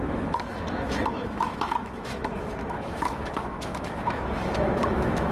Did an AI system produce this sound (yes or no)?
yes